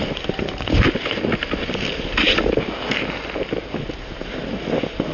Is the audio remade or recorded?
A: recorded